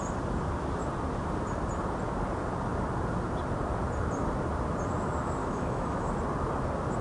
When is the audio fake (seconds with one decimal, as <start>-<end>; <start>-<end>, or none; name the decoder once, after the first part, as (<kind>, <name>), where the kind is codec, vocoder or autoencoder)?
5.4-6.1 (autoencoder, DAC-VAE)